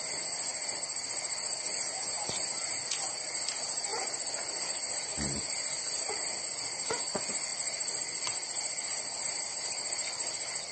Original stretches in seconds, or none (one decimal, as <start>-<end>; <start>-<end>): 0.0-7.5